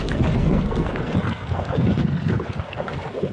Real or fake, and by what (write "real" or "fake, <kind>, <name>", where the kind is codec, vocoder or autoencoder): fake, codec, SNAC